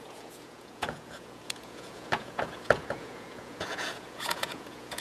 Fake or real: fake